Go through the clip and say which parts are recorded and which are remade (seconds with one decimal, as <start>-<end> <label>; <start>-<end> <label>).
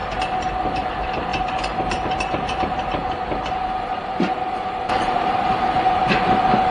0.0-0.9 recorded; 0.9-6.7 remade